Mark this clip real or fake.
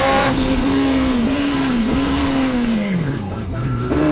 fake